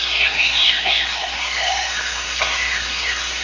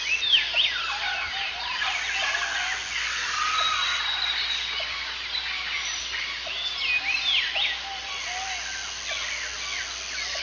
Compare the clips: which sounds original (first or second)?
second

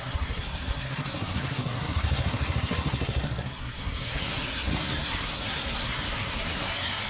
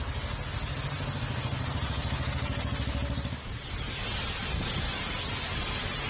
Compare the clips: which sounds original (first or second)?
second